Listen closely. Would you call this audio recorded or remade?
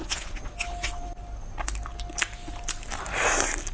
recorded